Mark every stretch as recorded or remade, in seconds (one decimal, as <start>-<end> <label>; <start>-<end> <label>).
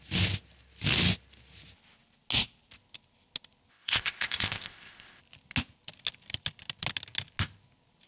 0.0-3.7 recorded; 3.7-5.2 remade; 5.2-8.1 recorded